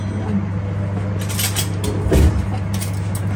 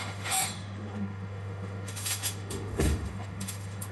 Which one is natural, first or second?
first